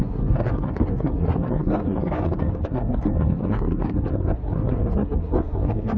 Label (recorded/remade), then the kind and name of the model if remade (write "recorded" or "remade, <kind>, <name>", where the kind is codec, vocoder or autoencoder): remade, codec, SNAC